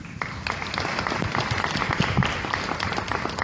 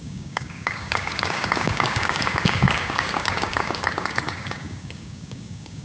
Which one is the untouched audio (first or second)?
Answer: first